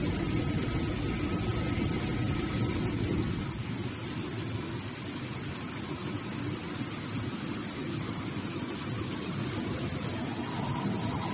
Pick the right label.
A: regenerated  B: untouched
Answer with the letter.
B